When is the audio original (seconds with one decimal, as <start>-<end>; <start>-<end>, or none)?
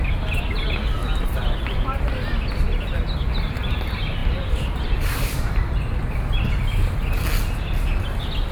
0.0-1.0; 2.0-4.2; 6.4-8.5